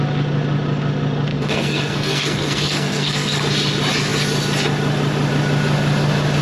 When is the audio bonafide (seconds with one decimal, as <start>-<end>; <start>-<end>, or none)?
0.0-1.3; 3.4-6.4